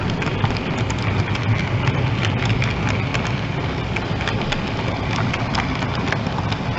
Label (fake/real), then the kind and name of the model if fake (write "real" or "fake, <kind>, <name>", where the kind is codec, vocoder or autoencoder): real